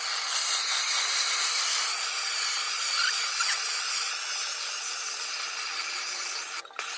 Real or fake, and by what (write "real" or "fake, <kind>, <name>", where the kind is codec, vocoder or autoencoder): real